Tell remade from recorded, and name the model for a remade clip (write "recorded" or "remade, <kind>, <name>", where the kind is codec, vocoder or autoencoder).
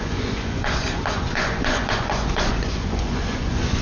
remade, vocoder, Vocos